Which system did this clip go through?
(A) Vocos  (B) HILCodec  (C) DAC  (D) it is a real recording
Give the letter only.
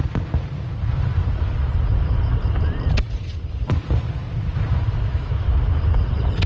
D